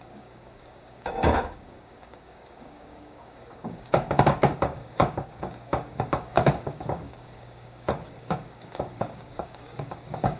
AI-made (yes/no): yes